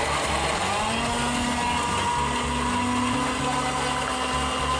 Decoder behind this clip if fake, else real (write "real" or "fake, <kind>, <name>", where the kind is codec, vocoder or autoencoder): real